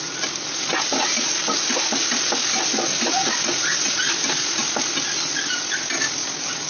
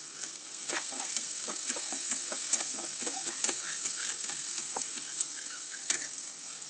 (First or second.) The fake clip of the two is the second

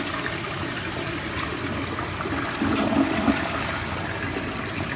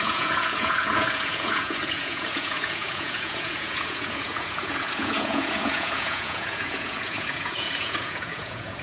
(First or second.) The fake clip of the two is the second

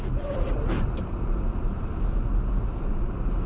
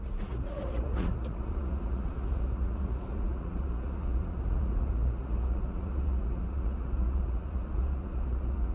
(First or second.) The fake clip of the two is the second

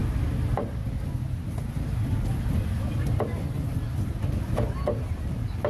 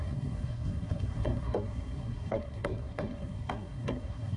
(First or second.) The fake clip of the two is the second